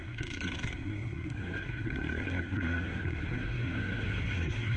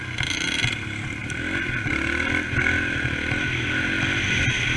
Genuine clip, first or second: second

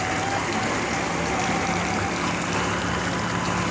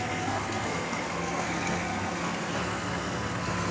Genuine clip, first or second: first